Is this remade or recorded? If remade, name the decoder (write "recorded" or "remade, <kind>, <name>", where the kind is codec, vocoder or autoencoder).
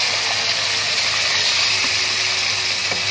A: recorded